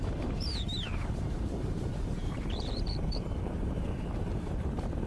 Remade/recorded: remade